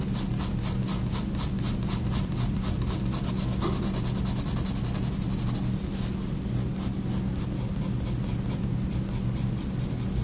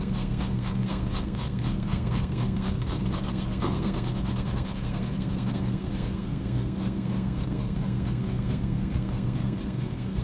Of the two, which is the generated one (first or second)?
second